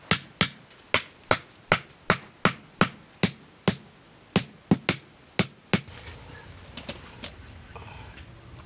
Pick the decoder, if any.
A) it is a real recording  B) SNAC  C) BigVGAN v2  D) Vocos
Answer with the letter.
A